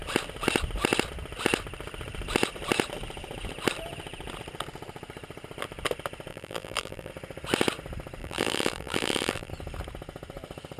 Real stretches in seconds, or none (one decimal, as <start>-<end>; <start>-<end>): 0.0-6.3; 7.1-8.2; 9.5-10.8